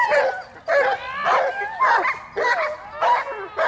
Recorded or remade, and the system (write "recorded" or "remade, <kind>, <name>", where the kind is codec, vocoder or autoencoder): recorded